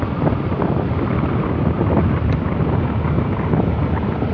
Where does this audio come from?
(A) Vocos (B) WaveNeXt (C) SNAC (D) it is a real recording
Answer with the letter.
D